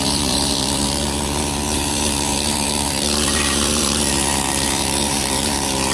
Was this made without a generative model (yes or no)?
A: no